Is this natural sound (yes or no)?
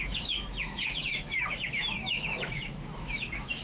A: no